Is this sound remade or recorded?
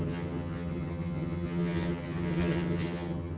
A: remade